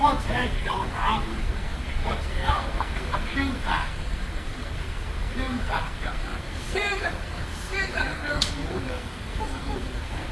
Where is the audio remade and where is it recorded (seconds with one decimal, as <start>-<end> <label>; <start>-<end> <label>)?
0.0-10.3 remade